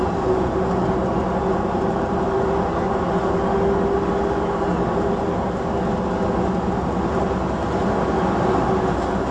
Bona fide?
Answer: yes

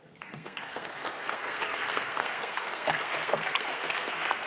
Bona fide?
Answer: no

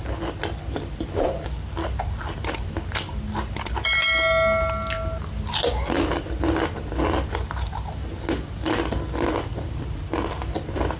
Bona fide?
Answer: yes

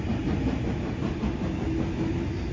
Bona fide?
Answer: yes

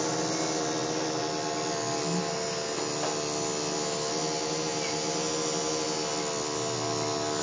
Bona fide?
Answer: yes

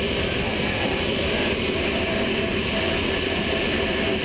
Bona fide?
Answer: no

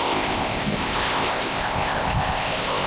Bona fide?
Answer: no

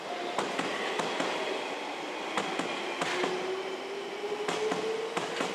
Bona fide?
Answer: yes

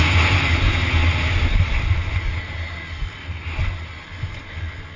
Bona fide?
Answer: yes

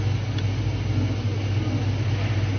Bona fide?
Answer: yes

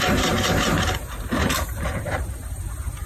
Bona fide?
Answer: no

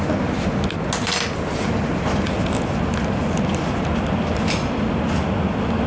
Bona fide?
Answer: yes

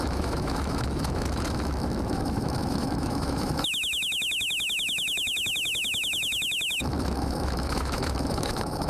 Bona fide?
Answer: no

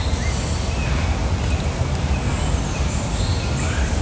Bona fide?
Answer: yes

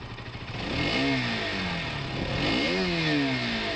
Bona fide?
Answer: yes